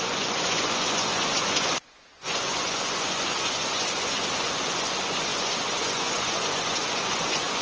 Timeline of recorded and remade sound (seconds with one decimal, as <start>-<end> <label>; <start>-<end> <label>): 0.0-7.6 remade